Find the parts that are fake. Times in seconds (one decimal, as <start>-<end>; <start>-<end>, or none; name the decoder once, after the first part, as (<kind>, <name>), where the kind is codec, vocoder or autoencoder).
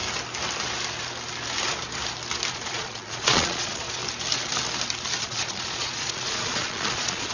2.5-4.0 (vocoder, Vocos); 5.2-7.3